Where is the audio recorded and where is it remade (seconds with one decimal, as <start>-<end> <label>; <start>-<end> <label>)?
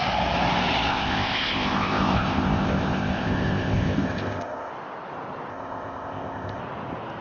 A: 0.0-0.9 recorded; 0.9-4.7 remade; 4.7-5.5 recorded; 5.5-6.6 remade; 6.6-7.2 recorded